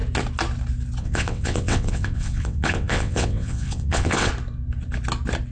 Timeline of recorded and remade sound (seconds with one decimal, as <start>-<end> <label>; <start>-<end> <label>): 0.0-1.0 recorded; 1.0-4.3 remade; 4.3-5.5 recorded